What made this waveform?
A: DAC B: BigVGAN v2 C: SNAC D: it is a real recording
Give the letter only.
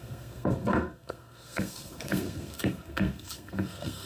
C